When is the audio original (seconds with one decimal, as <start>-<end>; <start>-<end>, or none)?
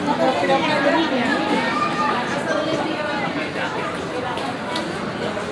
0.0-1.3; 3.8-5.5